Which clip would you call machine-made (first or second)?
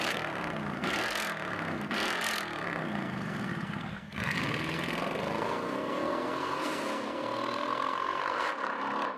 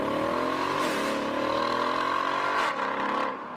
first